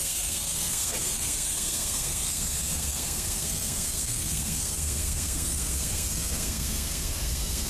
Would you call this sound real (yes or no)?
no